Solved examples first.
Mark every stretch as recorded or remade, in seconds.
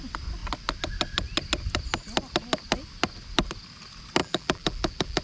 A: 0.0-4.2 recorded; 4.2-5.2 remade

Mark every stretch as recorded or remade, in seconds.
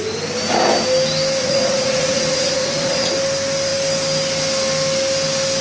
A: 0.0-1.4 recorded; 1.4-3.1 remade; 3.1-5.6 recorded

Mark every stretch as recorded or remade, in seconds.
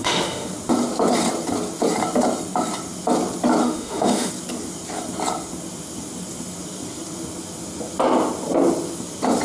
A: 0.0-0.5 remade; 0.5-3.6 recorded; 3.6-4.3 remade; 4.3-9.4 recorded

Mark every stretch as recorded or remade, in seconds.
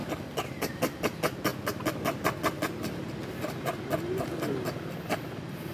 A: 0.0-5.7 recorded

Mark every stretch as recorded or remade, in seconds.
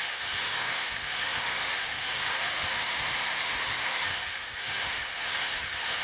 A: 0.0-6.0 remade